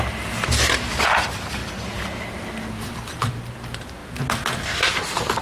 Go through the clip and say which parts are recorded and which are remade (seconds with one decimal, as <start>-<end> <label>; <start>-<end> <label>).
0.0-4.0 remade; 4.0-4.8 recorded; 4.8-5.4 remade